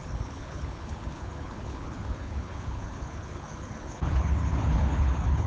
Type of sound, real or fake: fake